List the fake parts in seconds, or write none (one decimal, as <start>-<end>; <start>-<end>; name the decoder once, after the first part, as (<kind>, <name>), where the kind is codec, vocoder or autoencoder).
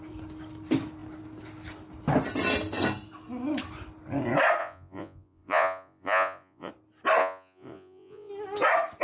4.6-6.7 (vocoder, Vocos); 7.2-8.3